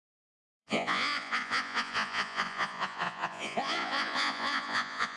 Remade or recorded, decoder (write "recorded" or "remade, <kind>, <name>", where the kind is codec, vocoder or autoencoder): remade, vocoder, Vocos